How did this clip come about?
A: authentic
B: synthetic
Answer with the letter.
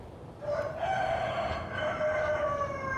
B